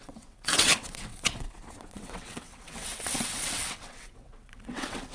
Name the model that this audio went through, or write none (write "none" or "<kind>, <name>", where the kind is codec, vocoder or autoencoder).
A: vocoder, WaveNeXt